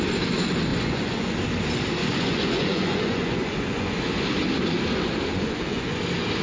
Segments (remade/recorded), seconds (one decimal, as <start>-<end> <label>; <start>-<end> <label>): 0.0-0.7 recorded; 0.7-1.3 remade; 1.3-2.0 recorded; 2.0-4.0 remade; 4.0-5.3 recorded; 5.3-6.0 remade; 6.0-6.4 recorded